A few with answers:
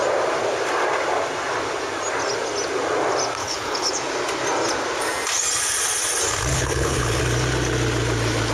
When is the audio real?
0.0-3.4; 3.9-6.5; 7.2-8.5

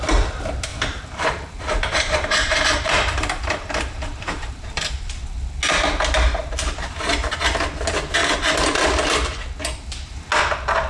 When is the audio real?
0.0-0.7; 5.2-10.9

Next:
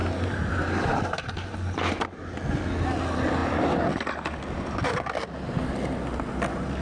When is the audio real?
0.0-6.8

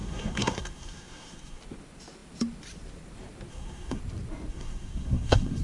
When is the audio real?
1.6-3.5; 4.0-4.5